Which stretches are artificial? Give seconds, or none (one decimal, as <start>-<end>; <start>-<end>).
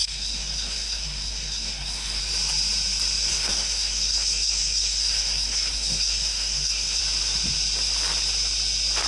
0.0-2.2; 3.3-7.0